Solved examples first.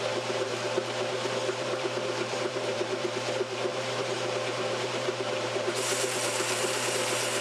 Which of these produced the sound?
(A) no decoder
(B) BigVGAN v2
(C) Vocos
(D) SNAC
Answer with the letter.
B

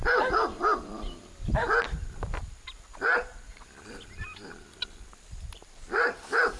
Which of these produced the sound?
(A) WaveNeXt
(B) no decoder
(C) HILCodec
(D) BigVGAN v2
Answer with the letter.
D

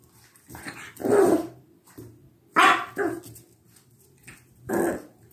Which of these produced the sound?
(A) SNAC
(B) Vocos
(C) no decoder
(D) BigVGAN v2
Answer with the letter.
C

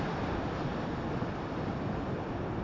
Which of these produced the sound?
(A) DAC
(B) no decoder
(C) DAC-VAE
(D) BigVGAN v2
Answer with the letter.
D